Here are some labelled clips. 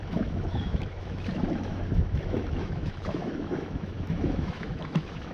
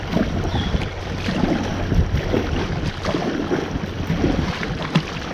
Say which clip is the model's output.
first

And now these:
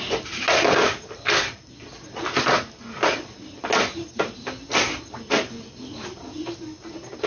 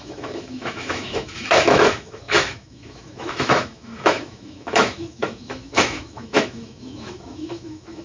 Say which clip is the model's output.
second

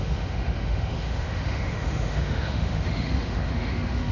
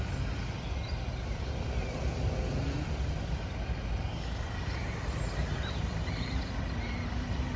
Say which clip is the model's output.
first